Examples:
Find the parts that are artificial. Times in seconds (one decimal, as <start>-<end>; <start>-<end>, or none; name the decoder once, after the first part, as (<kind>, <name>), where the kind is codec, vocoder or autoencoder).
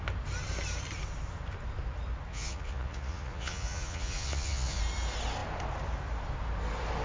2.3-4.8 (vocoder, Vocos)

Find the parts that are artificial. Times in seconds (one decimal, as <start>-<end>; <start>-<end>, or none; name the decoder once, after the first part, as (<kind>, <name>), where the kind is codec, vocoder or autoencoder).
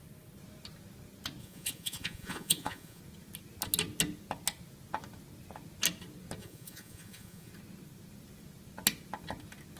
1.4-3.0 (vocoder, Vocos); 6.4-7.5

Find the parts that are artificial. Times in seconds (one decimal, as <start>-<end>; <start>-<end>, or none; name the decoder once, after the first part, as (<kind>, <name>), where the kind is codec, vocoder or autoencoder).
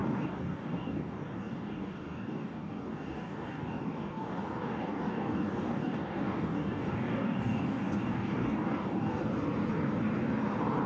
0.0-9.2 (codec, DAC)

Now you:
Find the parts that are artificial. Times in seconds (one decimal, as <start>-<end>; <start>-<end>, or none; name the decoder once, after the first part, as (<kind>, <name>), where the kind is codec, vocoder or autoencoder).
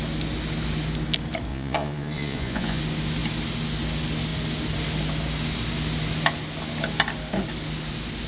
1.5-2.8 (vocoder, Vocos)